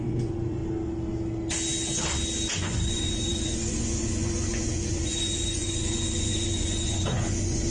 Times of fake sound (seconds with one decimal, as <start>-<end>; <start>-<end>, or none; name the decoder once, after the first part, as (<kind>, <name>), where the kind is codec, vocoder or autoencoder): 0.0-0.6 (vocoder, Vocos); 2.6-7.7